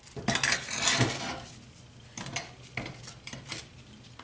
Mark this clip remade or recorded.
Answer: recorded